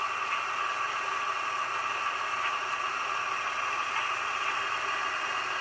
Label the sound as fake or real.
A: real